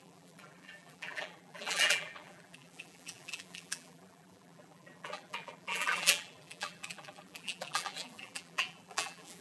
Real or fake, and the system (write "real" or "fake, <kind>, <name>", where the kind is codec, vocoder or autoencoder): fake, vocoder, BigVGAN v2